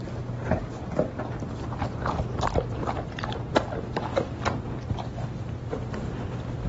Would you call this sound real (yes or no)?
yes